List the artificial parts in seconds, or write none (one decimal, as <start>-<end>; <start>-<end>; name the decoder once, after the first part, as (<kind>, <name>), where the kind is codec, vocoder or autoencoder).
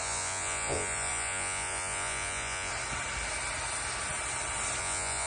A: 0.0-2.7 (vocoder, Vocos); 4.8-5.3